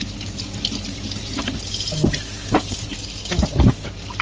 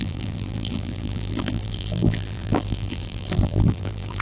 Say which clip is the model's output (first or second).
second